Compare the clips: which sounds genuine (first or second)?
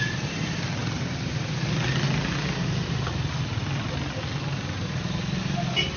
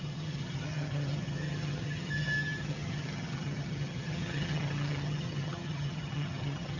first